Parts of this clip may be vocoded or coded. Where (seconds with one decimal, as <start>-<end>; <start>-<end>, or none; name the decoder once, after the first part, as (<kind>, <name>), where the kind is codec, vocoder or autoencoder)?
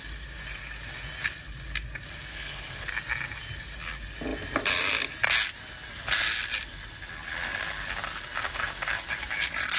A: 2.3-2.9 (codec, HILCodec)